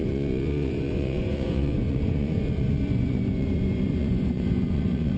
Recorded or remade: remade